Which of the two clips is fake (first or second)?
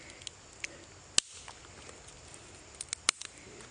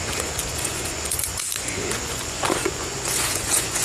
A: second